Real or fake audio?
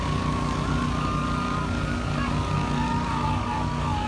fake